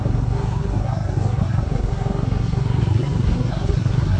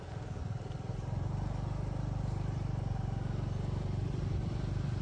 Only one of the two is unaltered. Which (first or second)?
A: second